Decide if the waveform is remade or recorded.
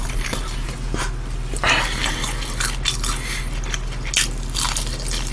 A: recorded